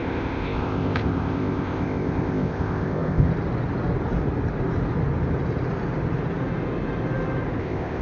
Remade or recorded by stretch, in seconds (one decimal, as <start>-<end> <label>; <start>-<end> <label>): 0.0-3.3 remade; 3.3-7.6 recorded; 7.6-8.0 remade